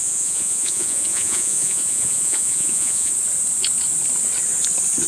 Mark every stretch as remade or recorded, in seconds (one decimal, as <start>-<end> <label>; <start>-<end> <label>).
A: 0.0-3.1 remade; 3.1-5.1 recorded